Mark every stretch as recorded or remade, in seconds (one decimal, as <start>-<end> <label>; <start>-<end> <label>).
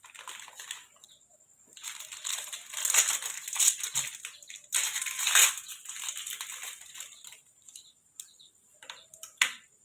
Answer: 0.0-5.4 recorded; 5.4-6.1 remade; 6.1-9.8 recorded